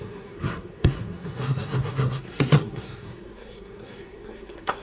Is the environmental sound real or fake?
fake